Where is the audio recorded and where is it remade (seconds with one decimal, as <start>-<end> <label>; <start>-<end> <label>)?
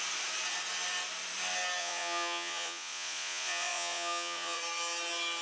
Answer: 0.0-1.8 recorded; 1.8-4.6 remade; 4.6-5.4 recorded